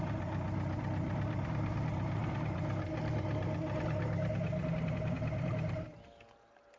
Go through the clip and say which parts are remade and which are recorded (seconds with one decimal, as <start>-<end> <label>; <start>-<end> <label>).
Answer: 0.0-6.8 recorded